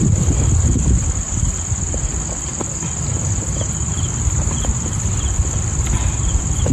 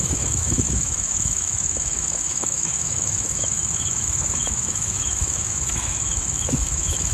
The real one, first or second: first